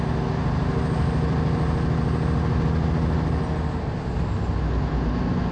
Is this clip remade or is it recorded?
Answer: recorded